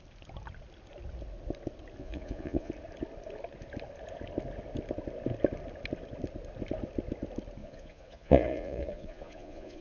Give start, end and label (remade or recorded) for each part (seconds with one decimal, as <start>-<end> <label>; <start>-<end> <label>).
0.0-2.0 recorded; 2.0-2.7 remade; 2.7-7.6 recorded; 7.6-9.8 remade